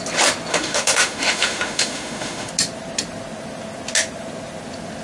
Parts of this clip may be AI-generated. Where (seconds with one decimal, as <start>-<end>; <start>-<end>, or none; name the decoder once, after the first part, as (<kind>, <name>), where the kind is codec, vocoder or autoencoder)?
0.5-2.5 (autoencoder, DAC-VAE)